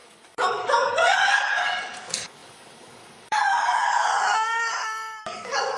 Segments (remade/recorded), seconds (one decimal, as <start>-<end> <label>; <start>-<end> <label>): 0.0-5.8 remade